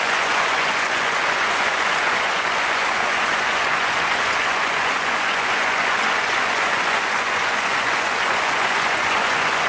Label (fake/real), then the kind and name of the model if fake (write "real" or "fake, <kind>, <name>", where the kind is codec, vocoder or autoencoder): fake, vocoder, Vocos